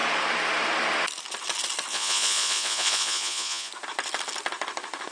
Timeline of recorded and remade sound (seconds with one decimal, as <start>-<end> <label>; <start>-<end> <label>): 0.0-1.9 recorded; 1.9-3.7 remade; 3.7-5.1 recorded